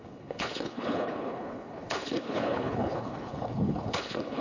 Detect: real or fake fake